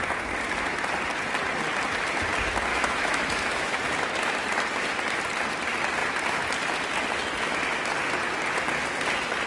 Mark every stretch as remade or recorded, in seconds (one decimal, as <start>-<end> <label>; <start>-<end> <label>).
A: 0.0-2.7 recorded; 2.7-3.8 remade; 3.8-9.5 recorded

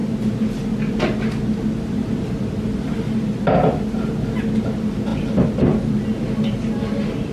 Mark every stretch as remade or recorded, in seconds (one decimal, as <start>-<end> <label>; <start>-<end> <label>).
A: 0.0-7.3 recorded

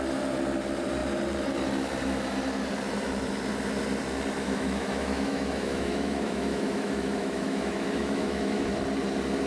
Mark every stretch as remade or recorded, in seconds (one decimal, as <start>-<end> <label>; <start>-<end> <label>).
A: 0.0-4.4 recorded; 4.4-8.7 remade; 8.7-9.5 recorded

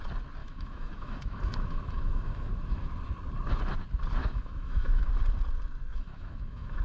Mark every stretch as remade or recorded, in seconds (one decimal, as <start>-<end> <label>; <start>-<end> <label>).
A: 0.0-0.4 recorded; 0.4-2.9 remade; 2.9-4.2 recorded; 4.2-5.1 remade; 5.1-5.9 recorded; 5.9-6.8 remade

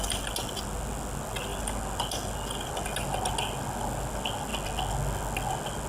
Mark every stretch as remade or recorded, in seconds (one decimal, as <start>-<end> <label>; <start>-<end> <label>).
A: 0.0-5.9 recorded

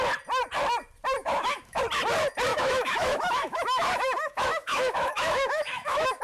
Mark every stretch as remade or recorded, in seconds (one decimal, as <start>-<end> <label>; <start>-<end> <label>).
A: 0.0-1.2 recorded; 1.2-1.8 remade; 1.8-2.5 recorded; 2.5-6.2 remade

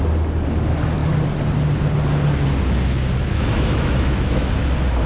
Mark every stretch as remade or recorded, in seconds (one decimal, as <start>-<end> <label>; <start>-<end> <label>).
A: 0.0-3.3 recorded; 3.3-4.5 remade; 4.5-5.1 recorded